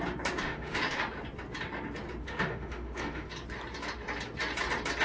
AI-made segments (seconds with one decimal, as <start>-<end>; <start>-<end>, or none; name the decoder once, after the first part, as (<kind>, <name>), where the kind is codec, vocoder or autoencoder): 0.4-1.0 (autoencoder, DAC-VAE); 2.2-3.3